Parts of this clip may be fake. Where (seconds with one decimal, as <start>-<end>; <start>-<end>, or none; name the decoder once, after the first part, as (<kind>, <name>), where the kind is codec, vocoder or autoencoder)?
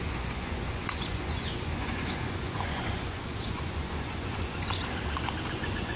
0.0-4.8 (vocoder, Vocos); 5.5-6.0